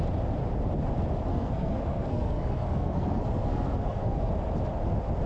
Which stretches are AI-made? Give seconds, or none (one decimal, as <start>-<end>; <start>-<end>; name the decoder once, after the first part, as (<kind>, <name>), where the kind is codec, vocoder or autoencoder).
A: 1.3-4.3 (codec, SNAC)